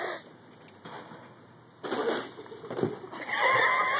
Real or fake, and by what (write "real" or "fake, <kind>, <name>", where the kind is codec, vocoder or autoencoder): real